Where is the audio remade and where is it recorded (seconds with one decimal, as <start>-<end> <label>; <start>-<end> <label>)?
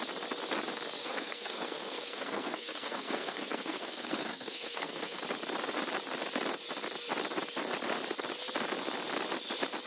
0.0-1.0 recorded; 1.0-5.2 remade; 5.2-9.9 recorded